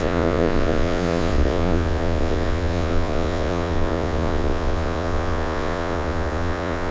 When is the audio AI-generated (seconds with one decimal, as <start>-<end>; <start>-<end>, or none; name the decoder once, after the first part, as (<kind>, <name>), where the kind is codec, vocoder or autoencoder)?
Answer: 0.0-6.9 (vocoder, Vocos)